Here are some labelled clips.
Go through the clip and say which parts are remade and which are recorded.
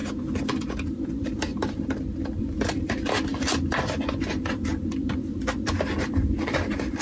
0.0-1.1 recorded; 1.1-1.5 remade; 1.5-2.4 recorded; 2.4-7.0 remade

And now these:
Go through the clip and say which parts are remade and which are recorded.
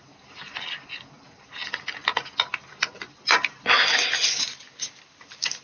0.0-5.6 recorded